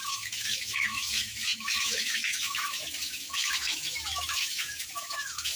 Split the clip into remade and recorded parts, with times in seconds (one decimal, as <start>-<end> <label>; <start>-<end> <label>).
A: 0.0-5.6 remade